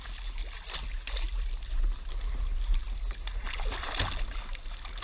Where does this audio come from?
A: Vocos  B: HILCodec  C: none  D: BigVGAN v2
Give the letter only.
C